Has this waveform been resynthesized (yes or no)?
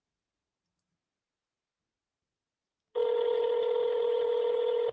yes